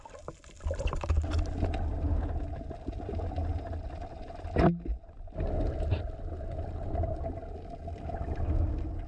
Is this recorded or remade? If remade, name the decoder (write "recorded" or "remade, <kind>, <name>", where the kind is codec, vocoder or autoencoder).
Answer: recorded